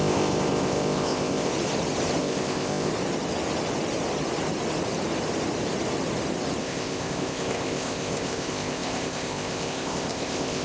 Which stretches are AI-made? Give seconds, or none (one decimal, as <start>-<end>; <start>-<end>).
0.0-1.5; 2.2-2.9; 6.6-10.6